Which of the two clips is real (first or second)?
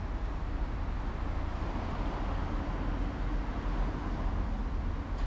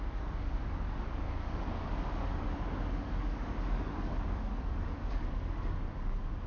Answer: first